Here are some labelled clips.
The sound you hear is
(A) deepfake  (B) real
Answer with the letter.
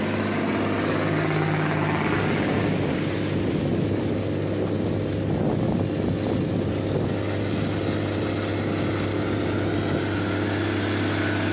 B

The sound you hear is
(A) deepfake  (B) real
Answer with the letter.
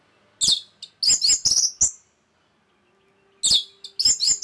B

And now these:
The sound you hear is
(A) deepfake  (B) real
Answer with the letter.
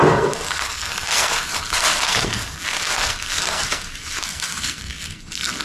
A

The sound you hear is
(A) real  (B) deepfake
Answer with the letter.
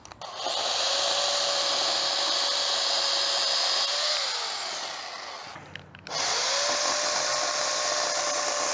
A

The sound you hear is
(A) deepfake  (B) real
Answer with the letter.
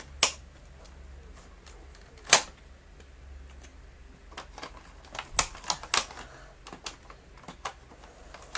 B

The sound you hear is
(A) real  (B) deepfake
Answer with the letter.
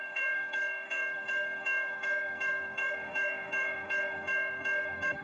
B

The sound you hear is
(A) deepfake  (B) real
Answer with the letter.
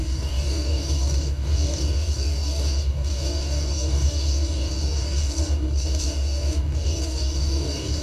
A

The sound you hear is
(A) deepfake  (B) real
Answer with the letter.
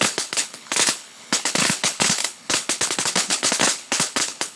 A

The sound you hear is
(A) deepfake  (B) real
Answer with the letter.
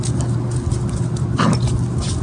B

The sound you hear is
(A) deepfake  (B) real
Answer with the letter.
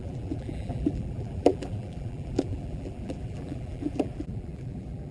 A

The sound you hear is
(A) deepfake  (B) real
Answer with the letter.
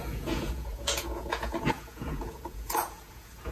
A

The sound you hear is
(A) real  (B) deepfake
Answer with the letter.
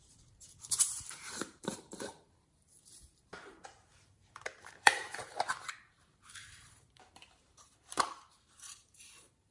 B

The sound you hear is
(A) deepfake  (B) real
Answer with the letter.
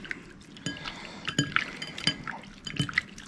B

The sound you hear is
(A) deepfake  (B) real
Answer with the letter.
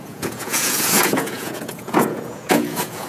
A